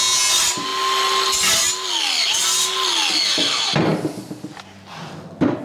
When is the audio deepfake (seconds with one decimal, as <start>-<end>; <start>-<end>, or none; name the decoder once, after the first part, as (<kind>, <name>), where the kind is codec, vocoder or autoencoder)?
none